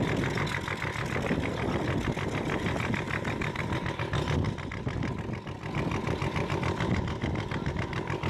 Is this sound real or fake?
real